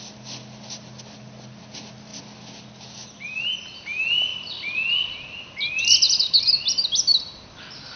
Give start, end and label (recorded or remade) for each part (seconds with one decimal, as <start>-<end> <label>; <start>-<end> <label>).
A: 0.0-8.0 recorded